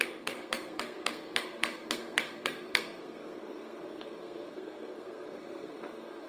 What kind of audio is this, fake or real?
fake